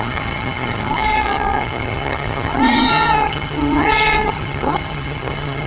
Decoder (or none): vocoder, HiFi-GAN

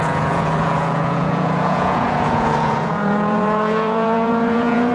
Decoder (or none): vocoder, Vocos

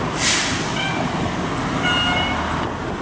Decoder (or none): none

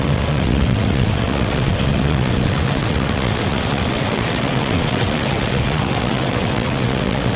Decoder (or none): vocoder, WaveNeXt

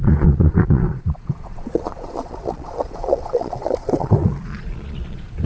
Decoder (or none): vocoder, Vocos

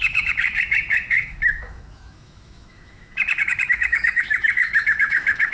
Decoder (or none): autoencoder, DAC-VAE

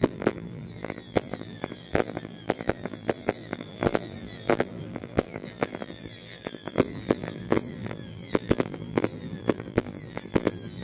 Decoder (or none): vocoder, BigVGAN v2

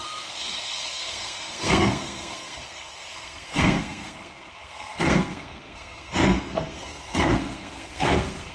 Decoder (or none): codec, SNAC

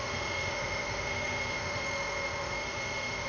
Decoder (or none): autoencoder, DAC-VAE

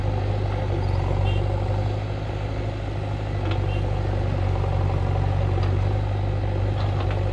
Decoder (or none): none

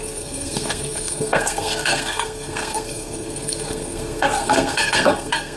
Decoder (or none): codec, SNAC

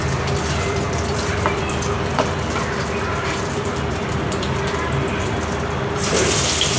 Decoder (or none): vocoder, BigVGAN v2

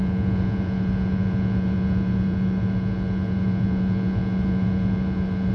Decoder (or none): vocoder, Vocos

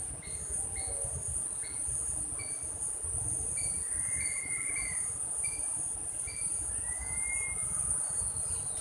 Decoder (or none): none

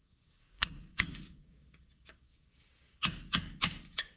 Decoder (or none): codec, DAC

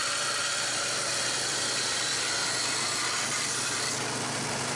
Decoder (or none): none